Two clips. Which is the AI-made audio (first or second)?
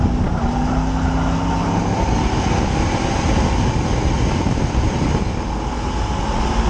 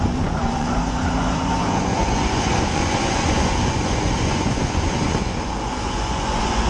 second